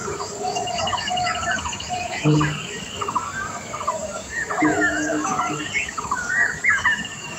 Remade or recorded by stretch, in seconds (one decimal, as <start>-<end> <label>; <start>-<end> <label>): 0.0-7.4 remade